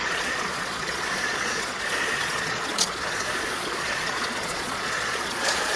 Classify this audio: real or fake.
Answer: fake